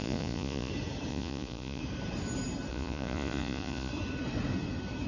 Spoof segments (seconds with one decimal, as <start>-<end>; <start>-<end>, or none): 0.0-0.7; 1.1-1.8; 2.7-3.9